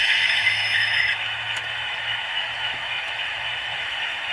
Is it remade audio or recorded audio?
remade